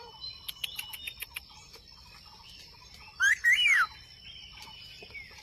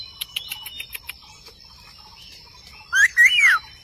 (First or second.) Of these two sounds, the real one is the second